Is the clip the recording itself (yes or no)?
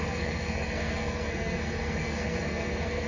no